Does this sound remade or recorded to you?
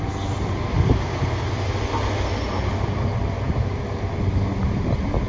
recorded